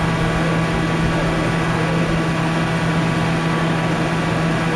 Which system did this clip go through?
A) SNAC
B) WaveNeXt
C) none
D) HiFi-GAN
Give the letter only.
C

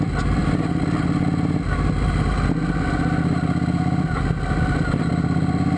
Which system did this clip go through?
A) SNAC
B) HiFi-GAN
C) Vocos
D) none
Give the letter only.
D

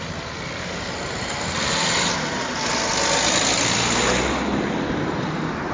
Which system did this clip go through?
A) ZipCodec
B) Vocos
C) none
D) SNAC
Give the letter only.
C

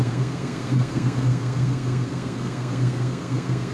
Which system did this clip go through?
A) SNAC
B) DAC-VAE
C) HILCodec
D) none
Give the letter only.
A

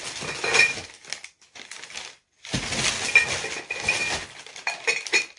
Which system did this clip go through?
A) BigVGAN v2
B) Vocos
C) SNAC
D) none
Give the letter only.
D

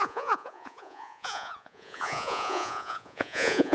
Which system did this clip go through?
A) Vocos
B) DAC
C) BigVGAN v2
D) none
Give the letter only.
A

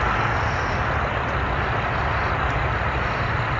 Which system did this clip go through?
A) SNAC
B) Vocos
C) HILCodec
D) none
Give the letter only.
D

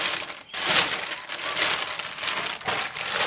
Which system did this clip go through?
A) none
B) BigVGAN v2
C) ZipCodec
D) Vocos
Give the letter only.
A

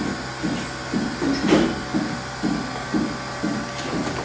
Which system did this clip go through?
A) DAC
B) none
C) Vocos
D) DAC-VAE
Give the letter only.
B